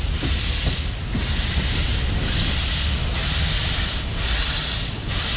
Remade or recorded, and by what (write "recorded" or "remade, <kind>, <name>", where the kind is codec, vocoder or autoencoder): recorded